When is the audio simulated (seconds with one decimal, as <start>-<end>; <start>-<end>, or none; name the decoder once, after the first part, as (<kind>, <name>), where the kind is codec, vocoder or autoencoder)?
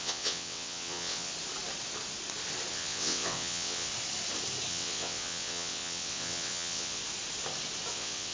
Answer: 0.0-1.3 (vocoder, WaveNeXt); 2.7-3.9; 4.7-7.0; 7.9-8.3